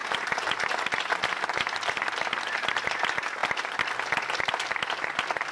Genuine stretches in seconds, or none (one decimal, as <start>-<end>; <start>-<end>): 0.0-5.5